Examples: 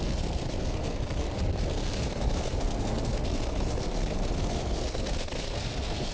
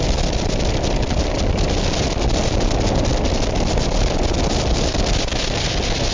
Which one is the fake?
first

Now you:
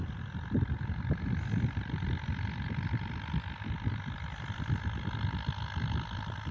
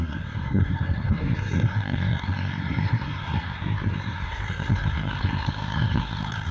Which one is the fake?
second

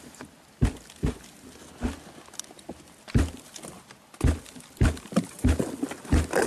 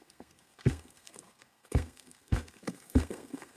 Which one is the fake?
second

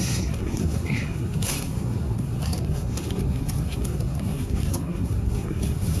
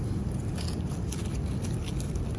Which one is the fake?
first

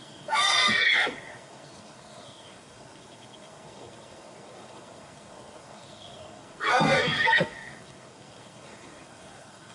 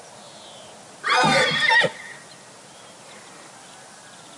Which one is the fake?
first